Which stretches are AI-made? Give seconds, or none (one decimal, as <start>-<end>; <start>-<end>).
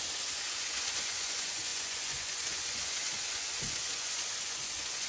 0.0-5.1